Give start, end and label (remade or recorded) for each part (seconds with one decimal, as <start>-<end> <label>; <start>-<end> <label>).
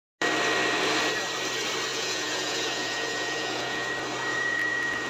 0.0-1.9 recorded; 1.9-3.9 remade; 3.9-4.3 recorded; 4.3-5.1 remade